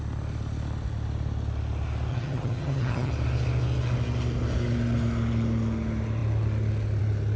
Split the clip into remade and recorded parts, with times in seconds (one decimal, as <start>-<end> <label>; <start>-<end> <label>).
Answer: 0.0-2.1 recorded; 2.1-3.1 remade; 3.1-7.4 recorded